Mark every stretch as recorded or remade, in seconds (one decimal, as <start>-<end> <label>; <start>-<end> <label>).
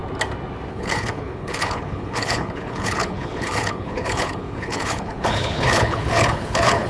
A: 0.0-0.7 recorded; 0.7-6.9 remade